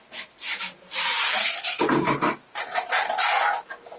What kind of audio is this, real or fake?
fake